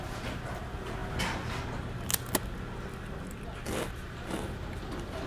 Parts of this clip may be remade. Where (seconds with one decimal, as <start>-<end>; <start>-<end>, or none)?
none